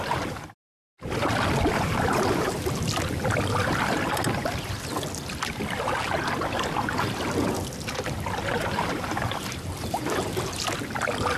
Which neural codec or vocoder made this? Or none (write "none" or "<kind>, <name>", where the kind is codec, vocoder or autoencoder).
none